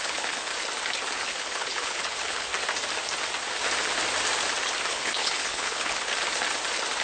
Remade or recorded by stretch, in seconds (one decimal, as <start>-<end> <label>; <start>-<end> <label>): 0.0-0.5 remade; 0.5-1.2 recorded; 1.2-2.5 remade; 2.5-4.9 recorded; 4.9-6.1 remade; 6.1-7.0 recorded